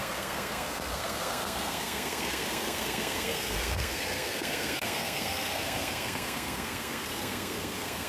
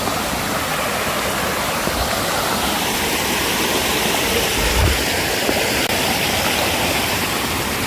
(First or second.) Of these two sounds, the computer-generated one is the first